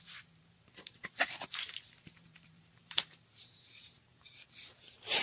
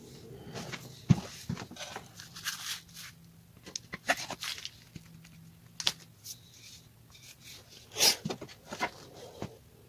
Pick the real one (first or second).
second